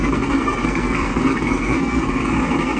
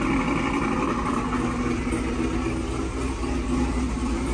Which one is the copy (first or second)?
first